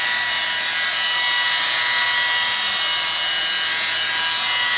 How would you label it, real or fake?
real